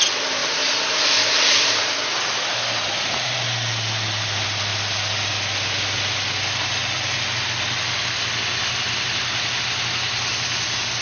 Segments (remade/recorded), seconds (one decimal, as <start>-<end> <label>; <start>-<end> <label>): 0.0-0.4 recorded; 0.4-2.1 remade; 2.1-11.0 recorded